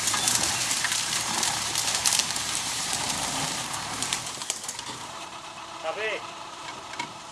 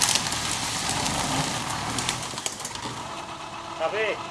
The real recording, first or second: second